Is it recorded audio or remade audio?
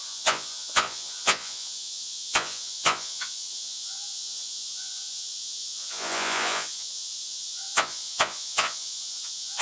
remade